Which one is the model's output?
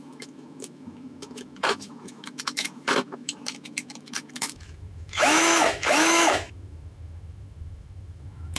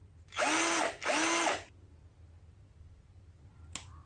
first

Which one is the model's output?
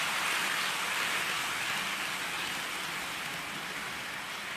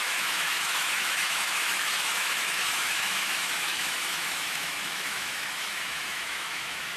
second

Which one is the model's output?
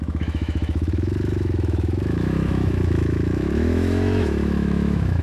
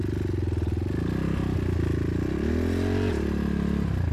first